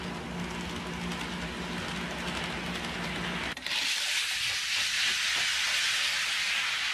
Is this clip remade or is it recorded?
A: recorded